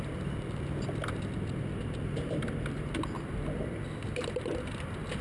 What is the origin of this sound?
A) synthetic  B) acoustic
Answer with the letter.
B